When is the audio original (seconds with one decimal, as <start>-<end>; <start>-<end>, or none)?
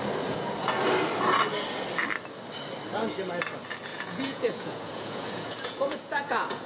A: 0.0-3.9